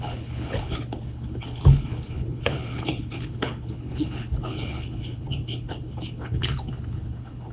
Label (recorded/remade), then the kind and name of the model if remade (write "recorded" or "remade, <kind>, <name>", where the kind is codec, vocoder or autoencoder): remade, codec, HILCodec